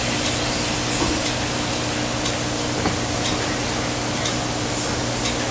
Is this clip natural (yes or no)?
yes